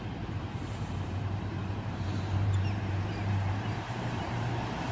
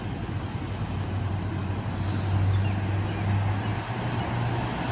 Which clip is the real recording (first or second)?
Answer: second